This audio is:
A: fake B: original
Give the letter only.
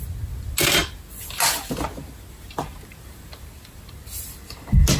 B